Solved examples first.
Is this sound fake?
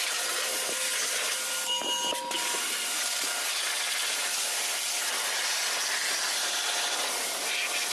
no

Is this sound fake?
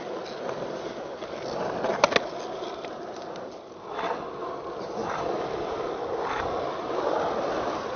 no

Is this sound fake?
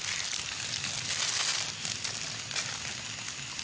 no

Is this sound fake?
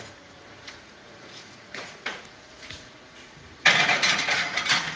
yes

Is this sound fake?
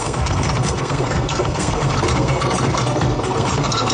yes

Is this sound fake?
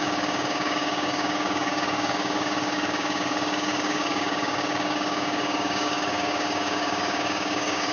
yes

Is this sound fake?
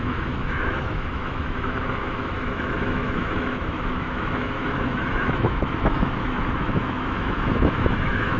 yes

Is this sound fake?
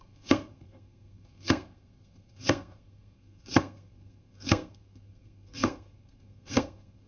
yes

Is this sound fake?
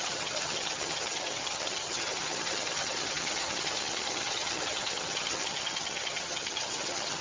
yes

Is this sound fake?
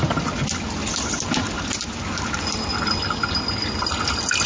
no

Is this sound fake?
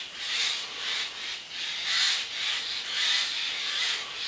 no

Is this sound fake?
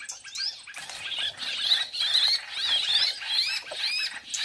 no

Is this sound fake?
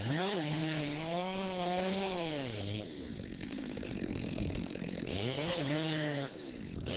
yes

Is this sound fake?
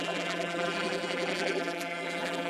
yes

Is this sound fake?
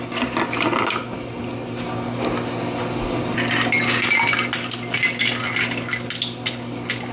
no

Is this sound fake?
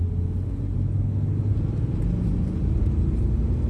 no